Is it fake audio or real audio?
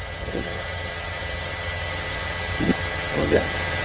fake